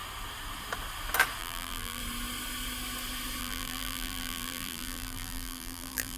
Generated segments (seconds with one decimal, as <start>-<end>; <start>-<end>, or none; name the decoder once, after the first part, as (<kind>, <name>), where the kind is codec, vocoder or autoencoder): 1.4-2.0 (vocoder, BigVGAN v2); 3.4-6.2

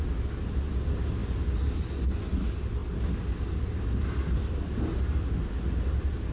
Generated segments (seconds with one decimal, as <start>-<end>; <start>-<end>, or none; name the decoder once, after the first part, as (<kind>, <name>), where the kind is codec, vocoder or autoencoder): none

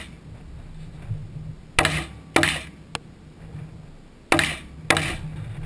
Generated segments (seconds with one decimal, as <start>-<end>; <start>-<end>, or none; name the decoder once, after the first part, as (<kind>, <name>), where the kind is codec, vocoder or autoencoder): none

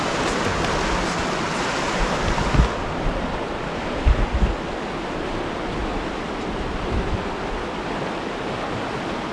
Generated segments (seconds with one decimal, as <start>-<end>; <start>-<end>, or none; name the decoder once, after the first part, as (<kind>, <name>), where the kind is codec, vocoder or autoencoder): 5.8-7.4 (vocoder, BigVGAN v2)

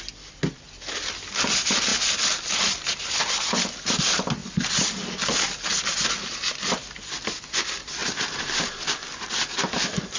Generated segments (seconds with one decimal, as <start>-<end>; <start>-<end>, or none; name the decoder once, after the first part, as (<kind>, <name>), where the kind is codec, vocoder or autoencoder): none

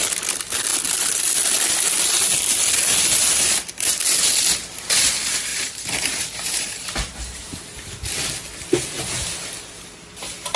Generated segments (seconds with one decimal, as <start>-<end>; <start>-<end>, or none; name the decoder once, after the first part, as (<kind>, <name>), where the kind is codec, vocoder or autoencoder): 5.5-7.6 (vocoder, BigVGAN v2)

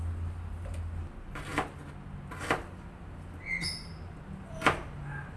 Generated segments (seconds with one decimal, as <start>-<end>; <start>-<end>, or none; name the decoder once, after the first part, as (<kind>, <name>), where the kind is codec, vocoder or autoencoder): none

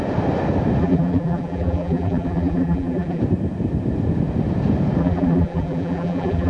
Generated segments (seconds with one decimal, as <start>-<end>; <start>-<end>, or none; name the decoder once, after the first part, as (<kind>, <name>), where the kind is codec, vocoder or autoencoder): 0.8-3.2 (vocoder, BigVGAN v2); 5.0-6.5